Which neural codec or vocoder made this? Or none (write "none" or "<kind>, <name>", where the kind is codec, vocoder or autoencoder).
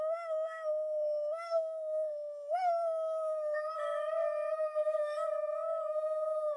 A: codec, SNAC